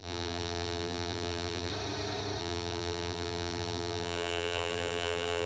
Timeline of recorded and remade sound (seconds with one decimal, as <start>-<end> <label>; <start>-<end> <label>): 0.0-1.7 remade; 1.7-2.4 recorded; 2.4-5.5 remade